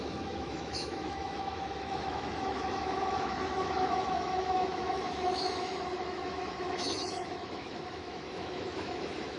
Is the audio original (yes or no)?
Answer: no